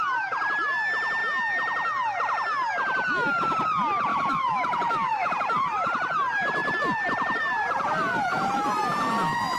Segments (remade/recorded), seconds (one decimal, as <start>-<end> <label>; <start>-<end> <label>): 0.0-4.1 recorded; 4.1-5.3 remade; 5.3-9.6 recorded